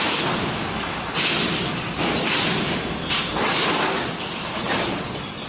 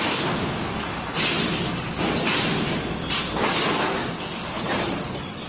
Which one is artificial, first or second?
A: first